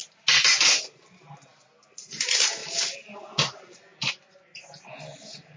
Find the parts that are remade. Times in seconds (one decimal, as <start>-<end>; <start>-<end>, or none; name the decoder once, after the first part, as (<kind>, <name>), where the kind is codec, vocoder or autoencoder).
none